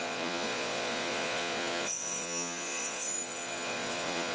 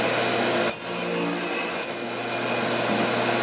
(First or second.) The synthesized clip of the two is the first